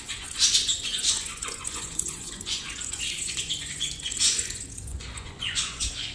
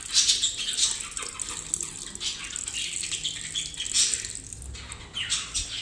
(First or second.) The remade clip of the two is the first